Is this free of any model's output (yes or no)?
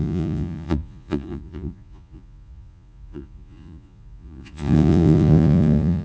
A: no